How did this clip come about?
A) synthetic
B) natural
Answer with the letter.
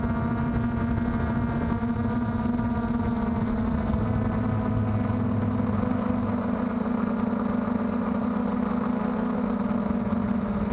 B